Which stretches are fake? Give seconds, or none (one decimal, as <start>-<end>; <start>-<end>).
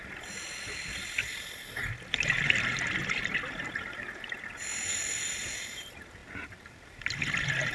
none